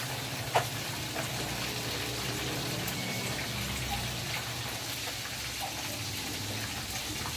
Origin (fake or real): fake